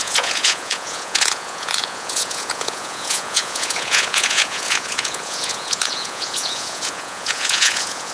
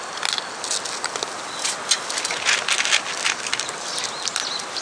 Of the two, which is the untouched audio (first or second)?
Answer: second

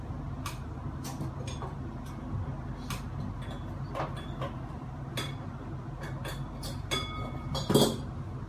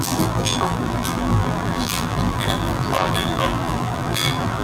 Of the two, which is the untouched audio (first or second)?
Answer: first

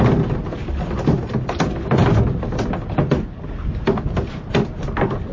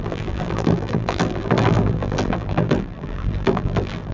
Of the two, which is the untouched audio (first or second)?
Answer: first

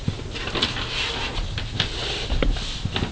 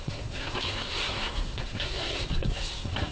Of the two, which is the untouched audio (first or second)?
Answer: first